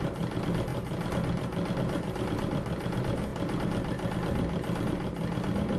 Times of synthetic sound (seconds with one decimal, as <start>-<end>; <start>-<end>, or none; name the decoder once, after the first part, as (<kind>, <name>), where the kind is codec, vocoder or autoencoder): none